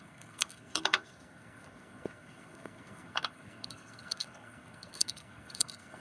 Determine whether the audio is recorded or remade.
remade